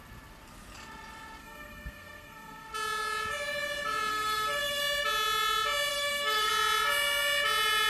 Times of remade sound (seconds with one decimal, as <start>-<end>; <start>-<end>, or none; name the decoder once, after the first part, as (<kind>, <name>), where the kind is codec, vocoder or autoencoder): 1.4-2.7 (codec, SNAC); 4.1-4.8; 5.9-6.5